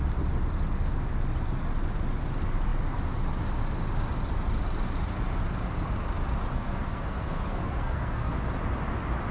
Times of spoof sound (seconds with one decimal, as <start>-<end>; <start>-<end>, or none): 6.5-8.3